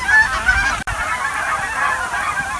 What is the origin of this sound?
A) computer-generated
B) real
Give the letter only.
B